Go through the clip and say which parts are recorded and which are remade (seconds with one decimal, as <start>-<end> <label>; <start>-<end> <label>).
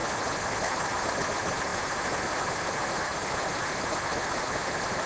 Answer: 0.0-5.1 recorded